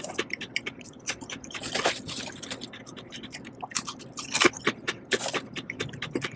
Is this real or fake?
fake